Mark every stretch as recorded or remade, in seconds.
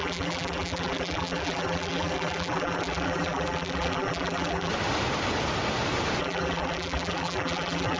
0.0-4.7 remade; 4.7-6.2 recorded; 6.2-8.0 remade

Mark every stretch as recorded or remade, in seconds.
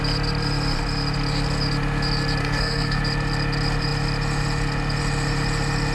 0.0-2.4 recorded; 2.4-3.0 remade; 3.0-5.9 recorded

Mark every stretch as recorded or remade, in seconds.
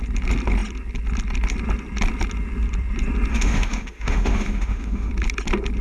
0.0-3.3 recorded; 3.3-5.1 remade; 5.1-5.8 recorded